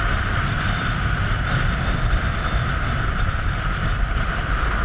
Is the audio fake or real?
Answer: fake